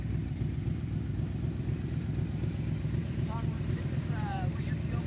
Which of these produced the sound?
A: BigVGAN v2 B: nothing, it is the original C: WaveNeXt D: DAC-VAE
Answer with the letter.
A